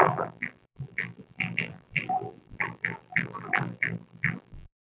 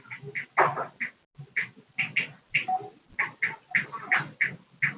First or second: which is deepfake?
first